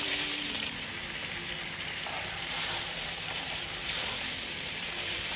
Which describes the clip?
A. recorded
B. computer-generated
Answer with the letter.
B